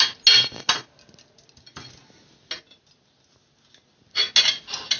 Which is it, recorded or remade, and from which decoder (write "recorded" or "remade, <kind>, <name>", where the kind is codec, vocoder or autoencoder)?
recorded